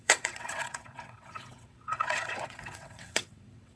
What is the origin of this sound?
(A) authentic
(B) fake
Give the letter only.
B